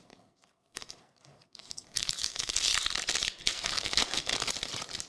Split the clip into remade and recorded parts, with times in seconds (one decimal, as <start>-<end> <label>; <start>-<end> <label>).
0.0-2.7 remade; 2.7-3.4 recorded; 3.4-4.3 remade; 4.3-5.1 recorded